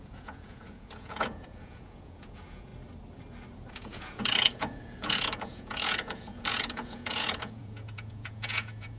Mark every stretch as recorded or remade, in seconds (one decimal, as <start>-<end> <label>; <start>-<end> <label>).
0.0-2.7 remade; 2.7-3.7 recorded; 3.7-9.0 remade